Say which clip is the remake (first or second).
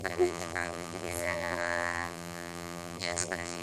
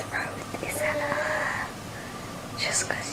first